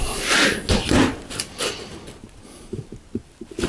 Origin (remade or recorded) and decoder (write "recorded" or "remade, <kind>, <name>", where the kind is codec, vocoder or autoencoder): recorded